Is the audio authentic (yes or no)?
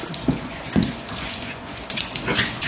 no